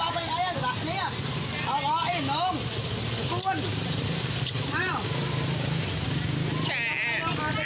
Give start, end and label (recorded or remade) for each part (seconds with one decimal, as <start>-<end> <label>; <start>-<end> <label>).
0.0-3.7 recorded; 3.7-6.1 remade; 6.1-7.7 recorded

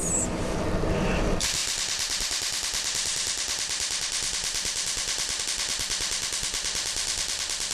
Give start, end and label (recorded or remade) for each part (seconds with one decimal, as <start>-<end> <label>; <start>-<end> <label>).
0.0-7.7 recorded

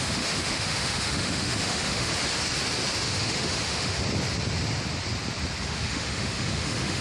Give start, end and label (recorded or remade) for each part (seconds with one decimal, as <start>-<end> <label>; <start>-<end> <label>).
0.0-2.1 remade; 2.1-3.0 recorded; 3.0-4.0 remade; 4.0-5.6 recorded; 5.6-7.0 remade